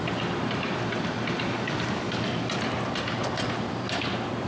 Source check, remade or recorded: recorded